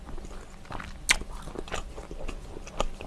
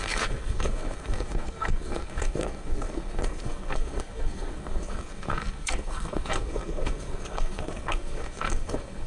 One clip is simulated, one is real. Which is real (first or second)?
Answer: first